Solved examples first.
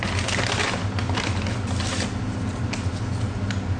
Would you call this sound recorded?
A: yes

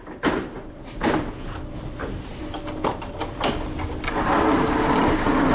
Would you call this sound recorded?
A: yes